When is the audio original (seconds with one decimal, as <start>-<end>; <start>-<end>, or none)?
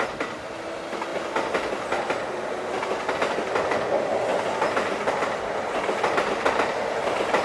0.0-4.3; 6.8-7.4